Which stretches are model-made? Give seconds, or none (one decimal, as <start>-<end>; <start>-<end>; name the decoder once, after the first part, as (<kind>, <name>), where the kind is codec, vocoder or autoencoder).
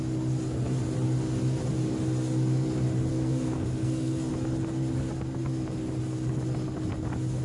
3.1-4.3 (codec, SNAC)